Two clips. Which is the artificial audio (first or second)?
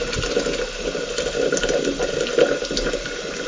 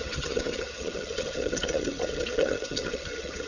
second